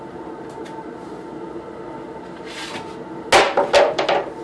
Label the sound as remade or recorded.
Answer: recorded